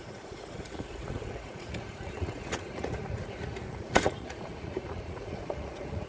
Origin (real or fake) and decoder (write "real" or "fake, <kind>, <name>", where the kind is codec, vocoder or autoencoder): fake, vocoder, Vocos